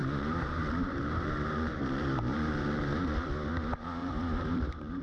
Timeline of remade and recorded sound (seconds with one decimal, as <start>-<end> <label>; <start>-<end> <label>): 0.0-3.0 remade; 3.0-4.0 recorded; 4.0-5.0 remade